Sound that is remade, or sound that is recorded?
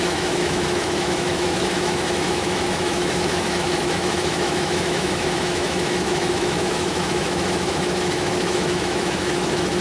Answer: remade